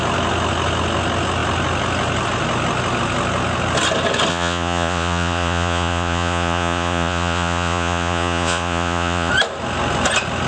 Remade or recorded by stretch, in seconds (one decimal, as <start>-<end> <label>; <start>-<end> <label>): 0.0-4.3 recorded; 4.3-9.3 remade; 9.3-10.5 recorded